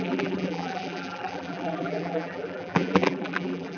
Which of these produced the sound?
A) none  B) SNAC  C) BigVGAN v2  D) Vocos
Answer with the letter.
C